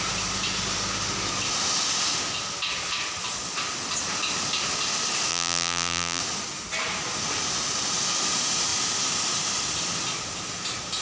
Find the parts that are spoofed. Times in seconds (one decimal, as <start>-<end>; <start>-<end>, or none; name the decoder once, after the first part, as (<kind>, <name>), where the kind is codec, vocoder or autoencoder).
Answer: 5.3-6.2 (vocoder, BigVGAN v2)